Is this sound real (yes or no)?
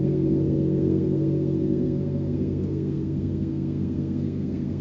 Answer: no